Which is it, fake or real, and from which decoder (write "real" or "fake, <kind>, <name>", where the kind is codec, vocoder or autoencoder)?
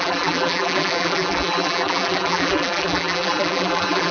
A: fake, vocoder, BigVGAN v2